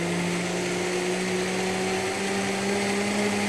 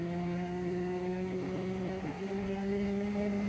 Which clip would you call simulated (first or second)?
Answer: second